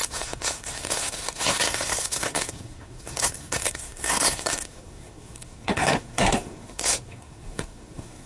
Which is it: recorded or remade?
remade